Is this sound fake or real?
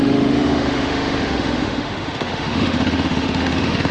fake